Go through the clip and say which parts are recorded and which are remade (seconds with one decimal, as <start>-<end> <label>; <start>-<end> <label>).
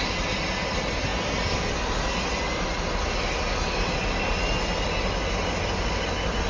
0.0-6.5 recorded